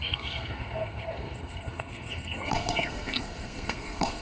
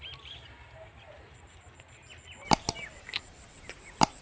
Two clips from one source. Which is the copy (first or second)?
first